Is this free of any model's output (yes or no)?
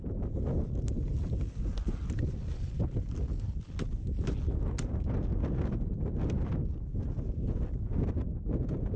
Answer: yes